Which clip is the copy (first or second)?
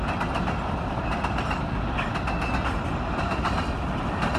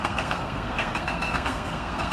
second